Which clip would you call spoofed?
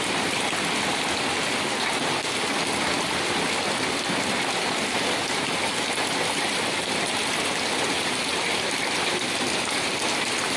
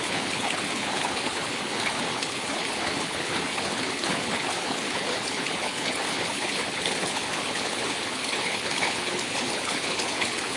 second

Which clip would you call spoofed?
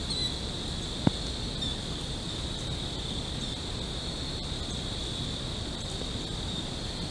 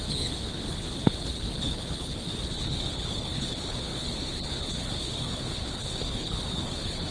second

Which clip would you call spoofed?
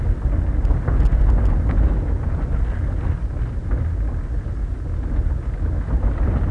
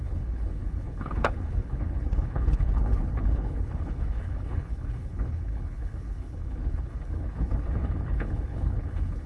second